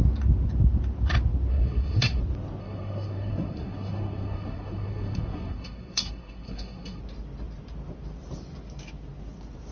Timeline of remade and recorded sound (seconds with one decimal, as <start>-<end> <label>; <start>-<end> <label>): 0.0-1.5 recorded; 1.5-2.2 remade; 2.2-2.6 recorded; 2.6-7.0 remade; 7.0-9.7 recorded